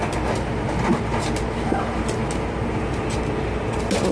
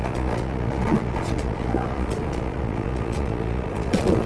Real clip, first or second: first